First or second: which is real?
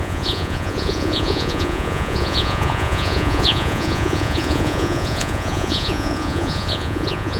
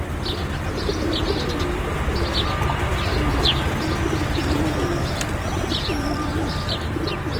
second